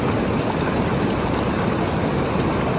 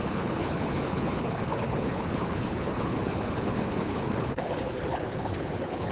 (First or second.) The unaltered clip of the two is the first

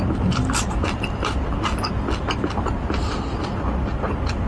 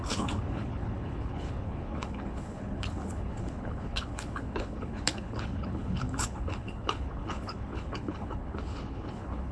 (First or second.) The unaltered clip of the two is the first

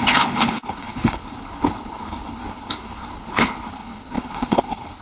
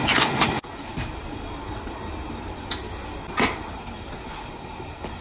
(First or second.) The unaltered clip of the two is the second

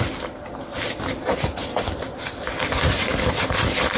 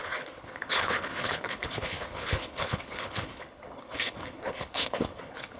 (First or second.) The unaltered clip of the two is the first